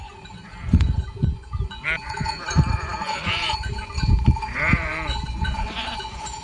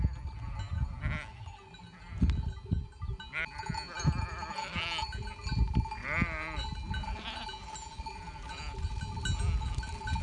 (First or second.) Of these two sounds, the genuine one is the second